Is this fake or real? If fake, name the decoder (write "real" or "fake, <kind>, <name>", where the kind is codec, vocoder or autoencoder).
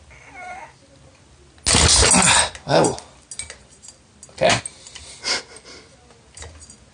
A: real